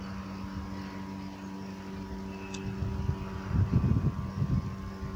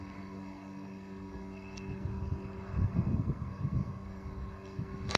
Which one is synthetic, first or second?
second